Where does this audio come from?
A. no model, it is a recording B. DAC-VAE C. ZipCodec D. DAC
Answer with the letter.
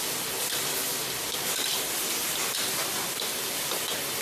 A